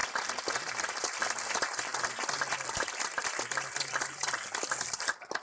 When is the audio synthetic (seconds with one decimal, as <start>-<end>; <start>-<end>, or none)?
0.6-1.9; 2.4-3.2; 3.9-5.4